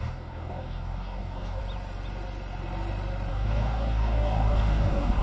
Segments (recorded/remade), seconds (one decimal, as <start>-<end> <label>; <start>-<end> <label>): 0.0-1.6 remade; 1.6-3.3 recorded; 3.3-5.2 remade